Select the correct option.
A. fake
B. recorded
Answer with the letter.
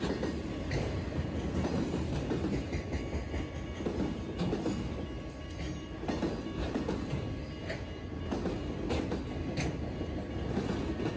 B